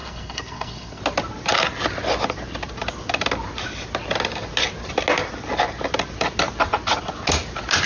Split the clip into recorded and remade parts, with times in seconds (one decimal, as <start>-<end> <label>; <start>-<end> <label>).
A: 0.0-1.0 remade; 1.0-7.9 recorded